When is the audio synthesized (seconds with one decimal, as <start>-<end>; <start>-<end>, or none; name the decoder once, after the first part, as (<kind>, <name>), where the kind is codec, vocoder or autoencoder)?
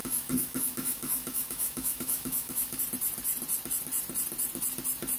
0.0-2.8 (autoencoder, DAC-VAE)